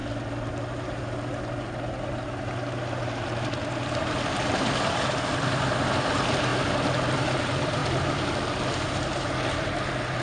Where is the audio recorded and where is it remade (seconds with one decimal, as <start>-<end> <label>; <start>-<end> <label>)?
0.0-10.2 recorded